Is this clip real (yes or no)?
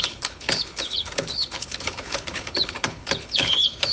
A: no